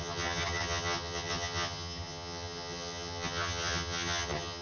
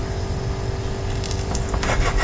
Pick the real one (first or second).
second